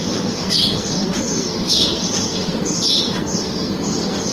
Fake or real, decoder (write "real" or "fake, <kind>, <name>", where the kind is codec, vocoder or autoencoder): fake, codec, SNAC